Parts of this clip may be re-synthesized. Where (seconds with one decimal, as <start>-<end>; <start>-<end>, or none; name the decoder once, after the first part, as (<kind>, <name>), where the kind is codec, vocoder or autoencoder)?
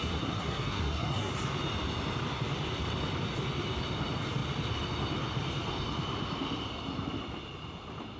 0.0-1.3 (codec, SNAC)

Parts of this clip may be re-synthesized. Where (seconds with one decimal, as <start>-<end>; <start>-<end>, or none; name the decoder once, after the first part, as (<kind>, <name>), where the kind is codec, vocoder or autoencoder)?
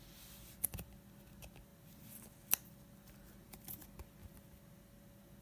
none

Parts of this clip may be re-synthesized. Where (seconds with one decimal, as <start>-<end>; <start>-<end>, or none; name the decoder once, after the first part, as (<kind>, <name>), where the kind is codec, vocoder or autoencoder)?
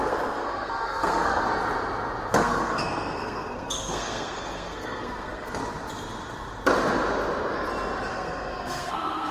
0.0-1.4 (codec, SNAC); 2.3-5.6; 8.1-9.3